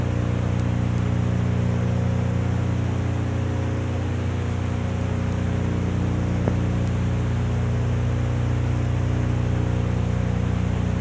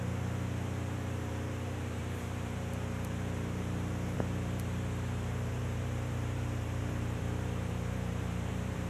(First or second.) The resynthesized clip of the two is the second